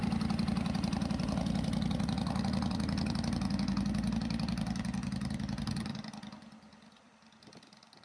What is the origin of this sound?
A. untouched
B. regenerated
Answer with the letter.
B